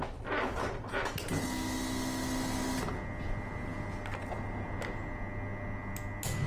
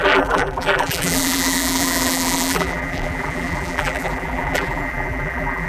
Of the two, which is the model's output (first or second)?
second